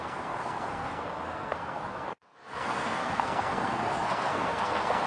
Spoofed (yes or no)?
yes